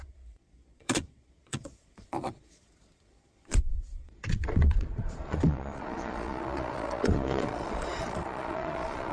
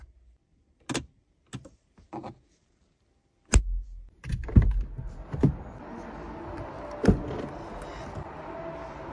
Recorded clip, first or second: second